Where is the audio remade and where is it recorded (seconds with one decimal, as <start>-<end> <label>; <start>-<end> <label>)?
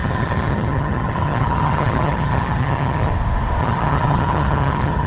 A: 0.0-3.1 remade; 3.1-3.6 recorded; 3.6-5.1 remade